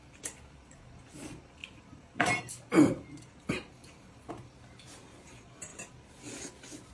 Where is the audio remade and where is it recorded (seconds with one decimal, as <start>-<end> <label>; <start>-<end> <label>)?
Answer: 0.0-1.6 recorded; 1.6-2.5 remade; 2.5-3.8 recorded; 3.8-4.3 remade; 4.3-6.9 recorded